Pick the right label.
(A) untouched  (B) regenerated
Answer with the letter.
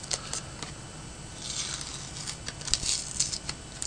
A